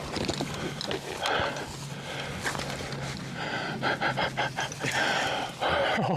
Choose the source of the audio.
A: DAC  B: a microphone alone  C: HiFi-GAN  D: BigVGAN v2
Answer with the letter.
B